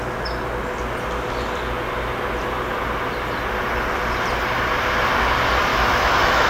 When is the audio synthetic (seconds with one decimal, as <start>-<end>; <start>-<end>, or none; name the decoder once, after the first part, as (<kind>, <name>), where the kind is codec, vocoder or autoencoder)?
5.7-6.5 (autoencoder, DAC-VAE)